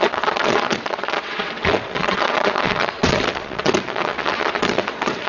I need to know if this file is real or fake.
fake